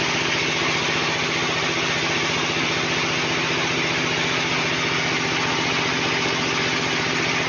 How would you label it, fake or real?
real